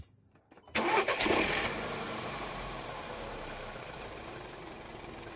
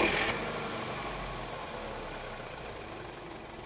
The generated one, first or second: first